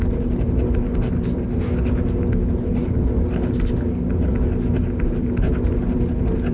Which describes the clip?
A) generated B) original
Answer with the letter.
B